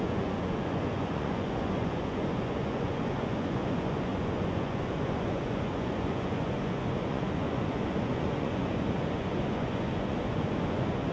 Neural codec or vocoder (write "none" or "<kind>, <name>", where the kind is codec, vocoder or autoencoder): vocoder, Vocos